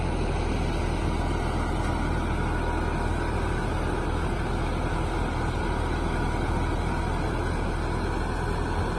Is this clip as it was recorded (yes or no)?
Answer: yes